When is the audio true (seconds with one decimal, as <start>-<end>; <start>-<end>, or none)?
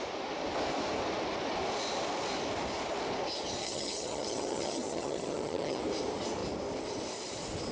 0.0-3.6; 5.8-7.7